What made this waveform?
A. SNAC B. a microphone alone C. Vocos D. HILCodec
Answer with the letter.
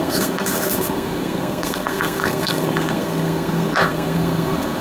A